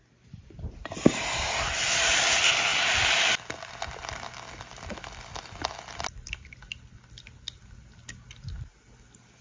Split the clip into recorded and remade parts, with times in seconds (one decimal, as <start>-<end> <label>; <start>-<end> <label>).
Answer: 0.0-9.4 recorded